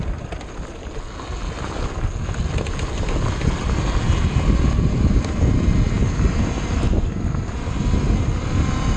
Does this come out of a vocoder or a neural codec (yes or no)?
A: no